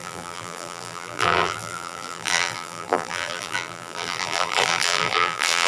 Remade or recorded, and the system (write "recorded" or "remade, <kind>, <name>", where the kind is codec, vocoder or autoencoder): remade, vocoder, BigVGAN v2